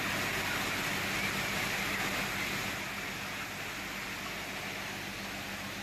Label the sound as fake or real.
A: real